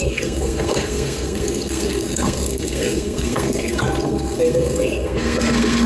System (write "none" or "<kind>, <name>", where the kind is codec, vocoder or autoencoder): codec, SNAC